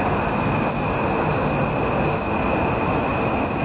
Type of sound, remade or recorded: recorded